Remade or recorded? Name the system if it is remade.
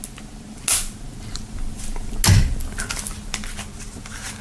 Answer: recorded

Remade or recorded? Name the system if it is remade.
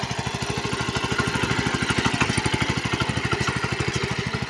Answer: recorded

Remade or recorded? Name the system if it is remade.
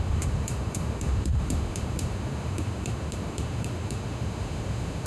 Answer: remade, autoencoder, DAC-VAE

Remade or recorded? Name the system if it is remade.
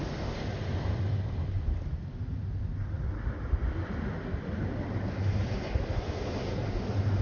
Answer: recorded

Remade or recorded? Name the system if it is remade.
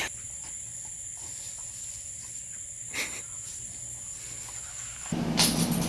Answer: recorded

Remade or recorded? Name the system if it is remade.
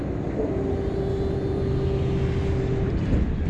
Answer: recorded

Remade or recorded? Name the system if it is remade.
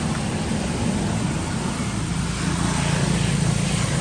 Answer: recorded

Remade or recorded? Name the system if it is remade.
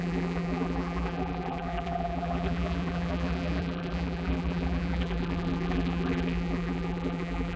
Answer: remade, vocoder, BigVGAN v2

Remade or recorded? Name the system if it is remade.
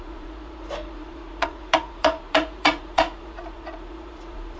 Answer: remade, vocoder, Vocos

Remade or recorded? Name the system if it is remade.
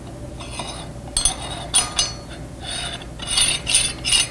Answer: recorded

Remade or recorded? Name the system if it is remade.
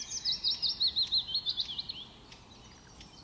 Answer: recorded